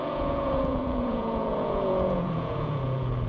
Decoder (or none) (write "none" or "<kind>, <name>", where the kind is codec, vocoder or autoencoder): vocoder, Vocos